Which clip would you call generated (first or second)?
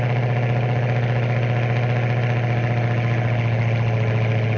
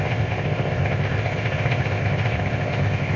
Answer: second